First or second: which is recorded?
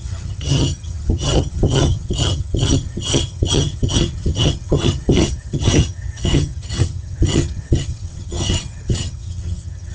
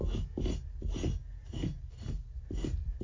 second